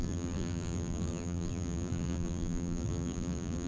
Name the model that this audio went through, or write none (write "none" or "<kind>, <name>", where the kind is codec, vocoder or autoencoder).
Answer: vocoder, BigVGAN v2